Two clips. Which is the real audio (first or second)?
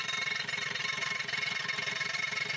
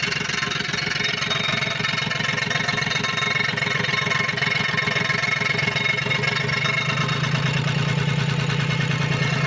second